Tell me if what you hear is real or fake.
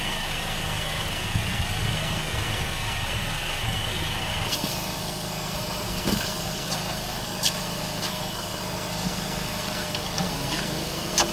fake